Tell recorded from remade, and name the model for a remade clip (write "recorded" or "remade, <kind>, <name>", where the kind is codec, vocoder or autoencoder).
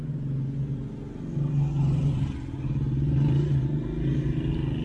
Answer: recorded